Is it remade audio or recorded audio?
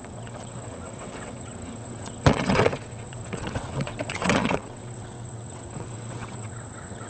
remade